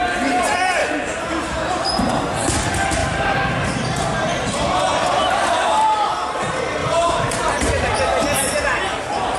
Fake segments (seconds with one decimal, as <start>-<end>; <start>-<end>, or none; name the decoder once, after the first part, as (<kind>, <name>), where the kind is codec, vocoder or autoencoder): 0.8-1.3 (vocoder, BigVGAN v2); 5.2-6.2; 6.8-7.7